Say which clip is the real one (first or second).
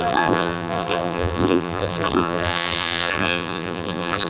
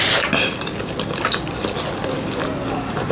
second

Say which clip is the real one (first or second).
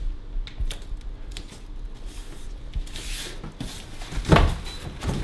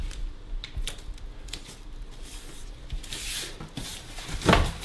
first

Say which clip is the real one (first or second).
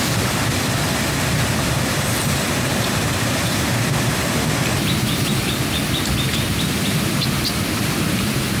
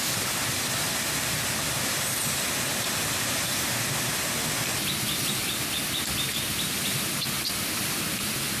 second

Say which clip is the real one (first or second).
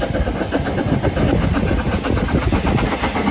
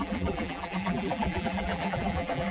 first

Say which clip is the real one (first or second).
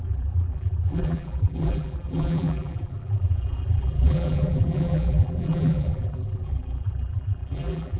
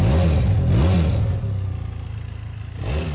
second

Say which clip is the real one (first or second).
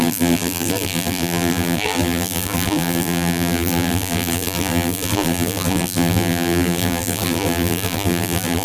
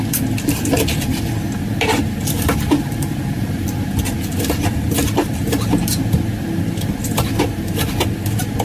second